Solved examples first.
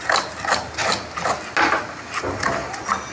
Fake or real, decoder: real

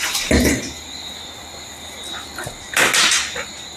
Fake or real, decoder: real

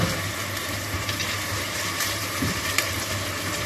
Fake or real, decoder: fake, vocoder, BigVGAN v2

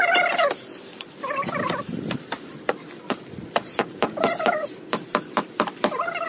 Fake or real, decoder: fake, vocoder, BigVGAN v2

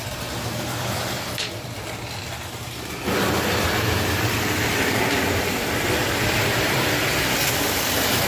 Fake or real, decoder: real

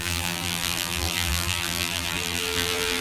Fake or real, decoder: fake, vocoder, BigVGAN v2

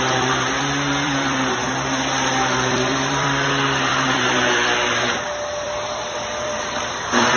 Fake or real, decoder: fake, vocoder, BigVGAN v2